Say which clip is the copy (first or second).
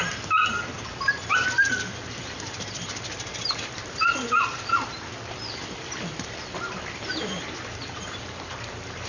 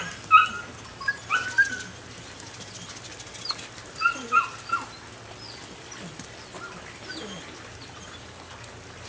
first